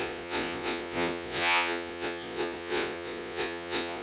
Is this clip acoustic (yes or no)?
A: no